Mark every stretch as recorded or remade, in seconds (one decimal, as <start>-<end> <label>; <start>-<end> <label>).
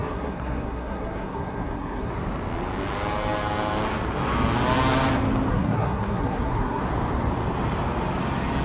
0.0-2.1 remade; 2.1-5.5 recorded; 5.5-6.8 remade; 6.8-8.6 recorded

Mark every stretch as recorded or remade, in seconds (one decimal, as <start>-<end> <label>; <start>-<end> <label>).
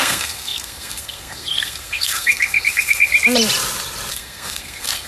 0.0-3.1 remade; 3.1-4.1 recorded; 4.1-5.1 remade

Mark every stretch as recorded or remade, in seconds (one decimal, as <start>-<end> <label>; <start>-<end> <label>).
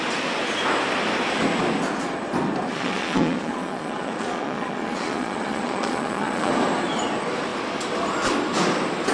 0.0-2.7 recorded; 2.7-6.5 remade; 6.5-9.1 recorded